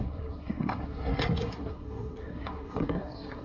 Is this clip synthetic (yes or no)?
yes